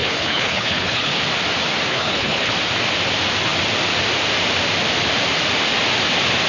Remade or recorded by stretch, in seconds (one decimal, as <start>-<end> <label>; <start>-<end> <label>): 0.0-1.2 remade; 1.2-1.9 recorded; 1.9-2.5 remade; 2.5-6.5 recorded